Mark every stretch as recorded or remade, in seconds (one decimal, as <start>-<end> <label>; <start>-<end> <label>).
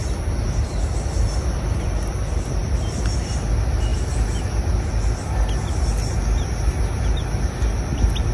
0.0-8.3 recorded